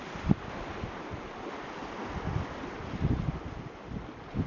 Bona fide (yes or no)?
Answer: yes